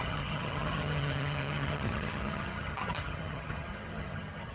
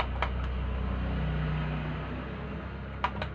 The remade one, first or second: first